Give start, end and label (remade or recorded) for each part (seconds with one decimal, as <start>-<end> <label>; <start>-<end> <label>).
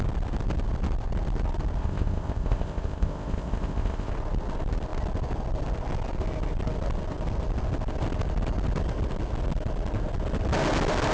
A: 0.0-1.8 recorded; 1.8-4.1 remade; 4.1-11.1 recorded